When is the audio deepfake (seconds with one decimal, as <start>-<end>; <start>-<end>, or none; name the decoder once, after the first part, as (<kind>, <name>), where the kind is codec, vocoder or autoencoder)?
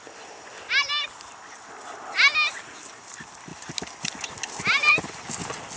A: none